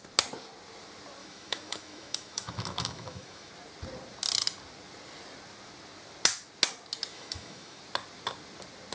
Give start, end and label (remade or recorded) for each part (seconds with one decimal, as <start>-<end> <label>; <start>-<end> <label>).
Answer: 0.0-1.2 recorded; 1.2-3.5 remade; 3.5-7.1 recorded; 7.1-7.8 remade; 7.8-8.9 recorded